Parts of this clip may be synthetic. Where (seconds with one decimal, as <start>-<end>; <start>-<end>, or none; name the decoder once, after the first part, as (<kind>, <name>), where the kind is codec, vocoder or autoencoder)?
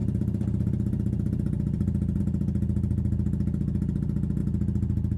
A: 0.0-2.2 (vocoder, BigVGAN v2)